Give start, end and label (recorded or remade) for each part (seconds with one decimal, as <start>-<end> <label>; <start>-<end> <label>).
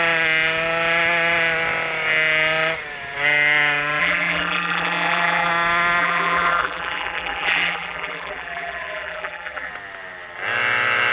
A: 0.0-4.0 recorded; 4.0-5.5 remade; 5.5-6.0 recorded; 6.0-9.7 remade; 9.7-11.1 recorded